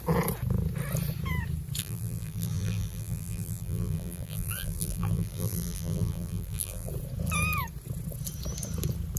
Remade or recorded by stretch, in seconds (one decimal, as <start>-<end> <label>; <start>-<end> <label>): 0.0-1.8 recorded; 1.8-6.9 remade; 6.9-9.2 recorded